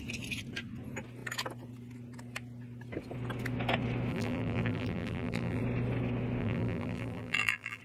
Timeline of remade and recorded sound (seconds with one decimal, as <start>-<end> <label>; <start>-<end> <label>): 0.0-4.1 recorded; 4.1-5.6 remade; 5.6-6.4 recorded; 6.4-7.8 remade